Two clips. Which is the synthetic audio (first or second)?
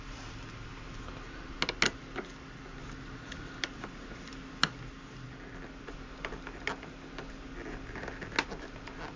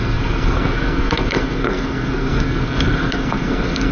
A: second